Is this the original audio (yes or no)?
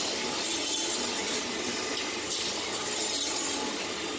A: yes